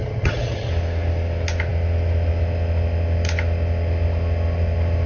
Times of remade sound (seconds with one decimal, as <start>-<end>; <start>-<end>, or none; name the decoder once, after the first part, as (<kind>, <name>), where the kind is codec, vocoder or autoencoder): 0.0-0.7 (vocoder, HiFi-GAN)